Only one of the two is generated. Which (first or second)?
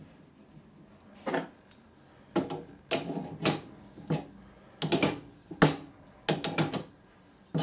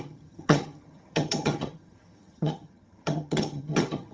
second